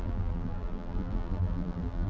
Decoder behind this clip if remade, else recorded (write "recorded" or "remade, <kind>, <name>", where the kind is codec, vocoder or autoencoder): remade, vocoder, BigVGAN v2